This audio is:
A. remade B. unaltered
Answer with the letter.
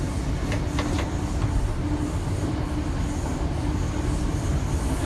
B